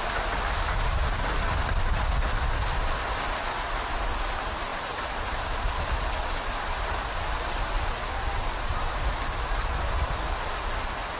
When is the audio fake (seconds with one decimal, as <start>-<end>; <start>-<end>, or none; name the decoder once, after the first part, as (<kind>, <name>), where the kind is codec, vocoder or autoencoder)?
4.7-6.1 (vocoder, BigVGAN v2)